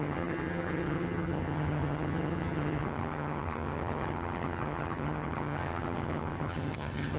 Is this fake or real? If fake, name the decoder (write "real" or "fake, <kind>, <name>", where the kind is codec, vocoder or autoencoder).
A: fake, vocoder, HiFi-GAN